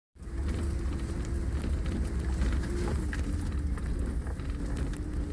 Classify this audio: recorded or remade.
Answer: recorded